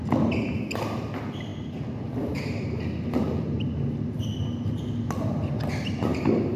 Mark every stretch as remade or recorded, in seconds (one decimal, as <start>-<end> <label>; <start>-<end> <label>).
0.0-6.6 recorded